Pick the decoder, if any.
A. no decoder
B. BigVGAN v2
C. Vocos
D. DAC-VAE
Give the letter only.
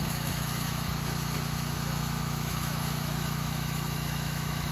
D